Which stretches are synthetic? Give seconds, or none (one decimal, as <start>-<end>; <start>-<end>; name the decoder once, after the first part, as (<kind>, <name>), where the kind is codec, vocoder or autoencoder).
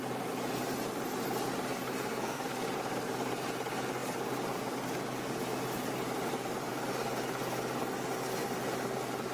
1.9-2.4 (codec, SNAC)